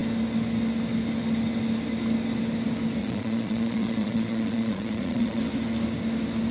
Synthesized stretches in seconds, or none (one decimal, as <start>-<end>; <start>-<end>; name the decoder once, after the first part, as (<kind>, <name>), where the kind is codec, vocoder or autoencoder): 3.0-5.4 (vocoder, Vocos)